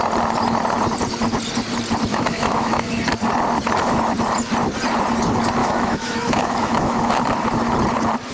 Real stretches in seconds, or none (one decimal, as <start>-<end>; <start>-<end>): 0.0-2.1; 2.9-5.6; 7.2-8.3